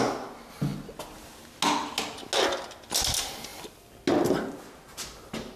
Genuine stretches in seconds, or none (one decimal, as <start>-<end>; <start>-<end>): 0.0-5.6

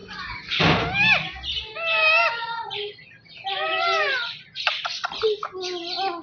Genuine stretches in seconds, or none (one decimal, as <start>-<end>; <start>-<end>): 0.0-2.2; 5.1-6.2

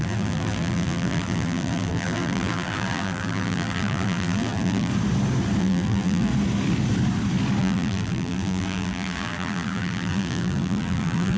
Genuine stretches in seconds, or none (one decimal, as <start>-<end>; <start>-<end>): 4.9-5.6; 6.3-7.6

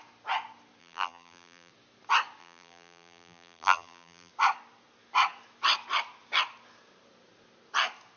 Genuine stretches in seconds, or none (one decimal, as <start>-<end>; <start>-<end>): 0.0-0.8; 1.7-2.4; 4.3-8.2

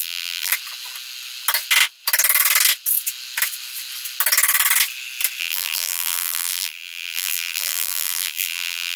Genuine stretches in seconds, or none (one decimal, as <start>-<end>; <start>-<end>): 0.5-5.4

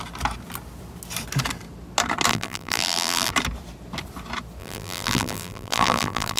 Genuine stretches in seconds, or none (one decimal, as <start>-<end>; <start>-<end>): 0.0-2.3; 3.3-4.6

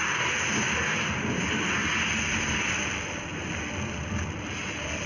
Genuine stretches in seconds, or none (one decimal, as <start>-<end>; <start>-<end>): 0.0-5.1